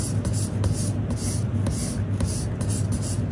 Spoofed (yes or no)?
no